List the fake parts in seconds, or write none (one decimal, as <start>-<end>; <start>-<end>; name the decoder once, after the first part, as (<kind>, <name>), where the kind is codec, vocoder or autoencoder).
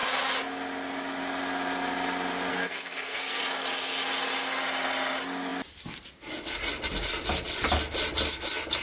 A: 2.5-3.4 (codec, SNAC)